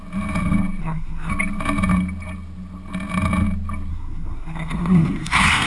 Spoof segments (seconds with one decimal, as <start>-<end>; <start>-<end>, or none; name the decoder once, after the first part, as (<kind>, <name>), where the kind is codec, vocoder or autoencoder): 0.8-1.3 (codec, SNAC); 3.9-5.7